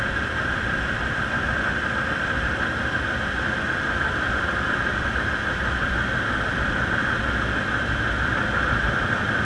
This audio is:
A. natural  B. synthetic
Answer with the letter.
B